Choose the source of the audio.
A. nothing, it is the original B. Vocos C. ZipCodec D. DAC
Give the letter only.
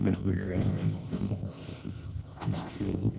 C